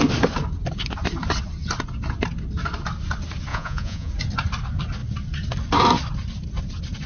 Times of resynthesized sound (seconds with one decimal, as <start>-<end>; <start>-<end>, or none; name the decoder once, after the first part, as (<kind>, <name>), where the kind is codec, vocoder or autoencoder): 3.5-4.1 (vocoder, Vocos)